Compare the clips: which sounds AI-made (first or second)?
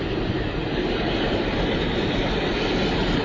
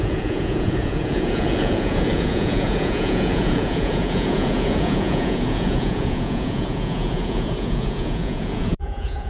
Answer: second